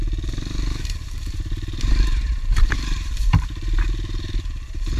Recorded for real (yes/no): no